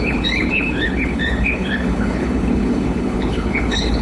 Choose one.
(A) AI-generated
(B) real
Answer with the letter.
A